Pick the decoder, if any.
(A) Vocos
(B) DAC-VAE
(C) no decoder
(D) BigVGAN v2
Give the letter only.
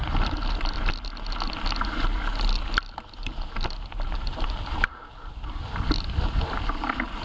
C